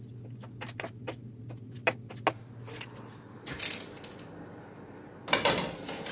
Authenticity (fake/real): real